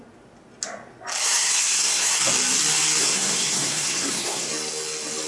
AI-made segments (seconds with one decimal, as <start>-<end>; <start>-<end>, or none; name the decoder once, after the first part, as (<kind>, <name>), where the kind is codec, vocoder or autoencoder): 1.2-2.2 (codec, SNAC); 3.0-4.5

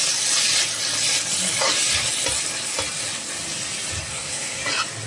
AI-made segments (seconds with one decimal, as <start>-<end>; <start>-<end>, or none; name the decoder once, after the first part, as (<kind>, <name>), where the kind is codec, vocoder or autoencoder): 4.1-4.6 (codec, SNAC)

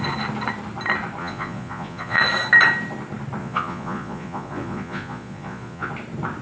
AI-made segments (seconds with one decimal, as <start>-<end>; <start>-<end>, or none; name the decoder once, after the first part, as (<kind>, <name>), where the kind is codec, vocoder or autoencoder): 1.2-2.2 (vocoder, Vocos); 3.4-5.9